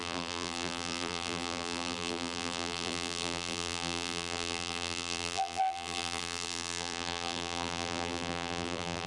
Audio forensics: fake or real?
fake